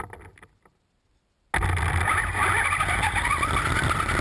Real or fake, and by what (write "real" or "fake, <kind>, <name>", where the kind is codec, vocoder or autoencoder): real